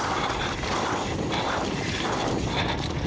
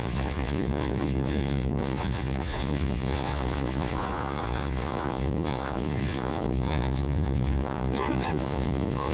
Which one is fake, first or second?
second